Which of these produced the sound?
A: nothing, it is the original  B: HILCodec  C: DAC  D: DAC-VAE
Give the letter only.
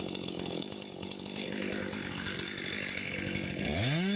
C